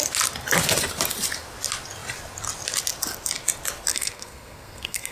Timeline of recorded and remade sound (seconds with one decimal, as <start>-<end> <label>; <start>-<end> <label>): 0.0-3.9 recorded; 3.9-5.1 remade